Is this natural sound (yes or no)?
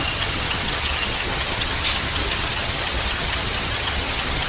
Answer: no